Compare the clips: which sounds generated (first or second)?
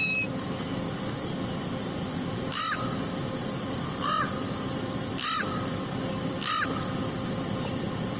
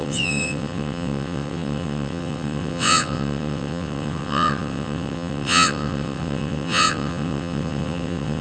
second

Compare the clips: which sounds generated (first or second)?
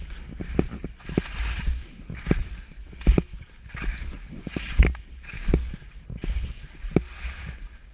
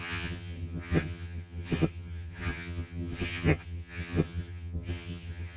second